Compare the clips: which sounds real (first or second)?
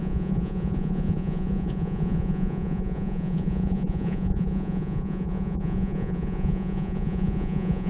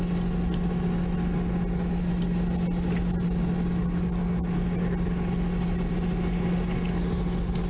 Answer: second